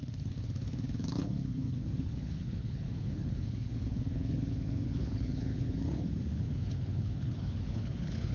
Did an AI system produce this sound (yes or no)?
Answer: yes